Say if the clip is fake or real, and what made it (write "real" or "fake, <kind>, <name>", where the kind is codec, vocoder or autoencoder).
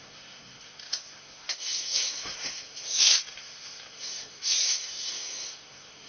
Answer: fake, codec, SNAC